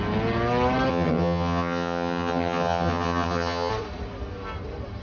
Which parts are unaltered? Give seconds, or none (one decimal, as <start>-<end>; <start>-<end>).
0.0-0.9; 3.7-5.0